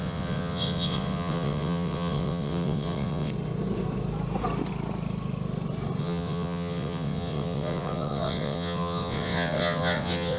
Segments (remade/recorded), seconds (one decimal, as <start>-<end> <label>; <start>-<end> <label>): 0.0-3.3 remade; 3.3-6.0 recorded; 6.0-10.4 remade